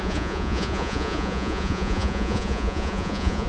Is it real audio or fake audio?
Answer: fake